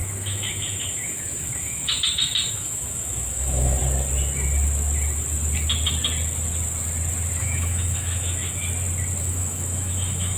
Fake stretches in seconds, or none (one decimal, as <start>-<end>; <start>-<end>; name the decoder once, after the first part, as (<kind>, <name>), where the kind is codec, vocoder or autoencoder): 0.0-3.8 (autoencoder, DAC-VAE); 7.4-8.6; 9.2-10.4